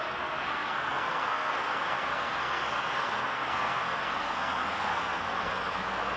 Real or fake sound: fake